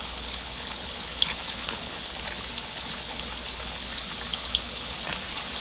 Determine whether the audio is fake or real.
fake